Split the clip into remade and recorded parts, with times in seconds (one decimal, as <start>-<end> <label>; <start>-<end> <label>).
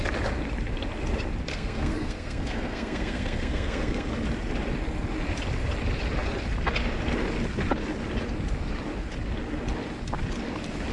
0.0-1.5 recorded; 1.5-4.1 remade; 4.1-10.9 recorded